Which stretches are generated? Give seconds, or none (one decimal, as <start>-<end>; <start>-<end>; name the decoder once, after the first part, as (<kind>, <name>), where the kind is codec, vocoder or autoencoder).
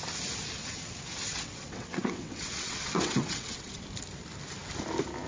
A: 0.6-3.8 (vocoder, WaveNeXt)